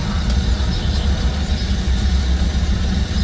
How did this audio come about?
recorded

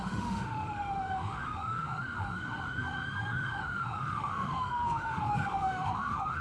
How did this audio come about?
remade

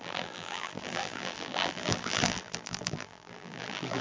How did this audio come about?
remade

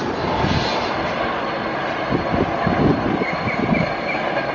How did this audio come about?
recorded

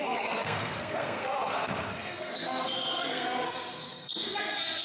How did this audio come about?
remade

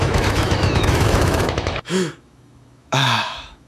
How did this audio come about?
remade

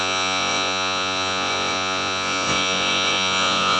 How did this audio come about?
remade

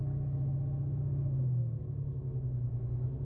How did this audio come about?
recorded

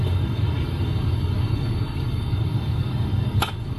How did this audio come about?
remade